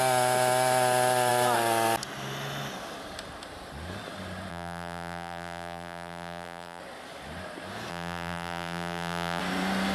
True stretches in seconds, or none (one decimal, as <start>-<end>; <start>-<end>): 0.0-4.5; 6.8-7.9; 9.4-9.9